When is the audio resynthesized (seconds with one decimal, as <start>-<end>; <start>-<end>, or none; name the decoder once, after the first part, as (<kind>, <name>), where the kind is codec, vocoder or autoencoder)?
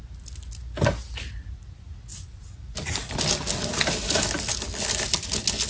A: none